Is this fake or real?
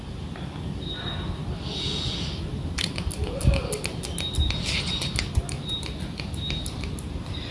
real